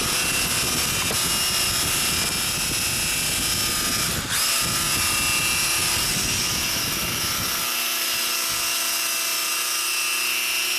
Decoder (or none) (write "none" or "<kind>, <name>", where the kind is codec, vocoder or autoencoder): none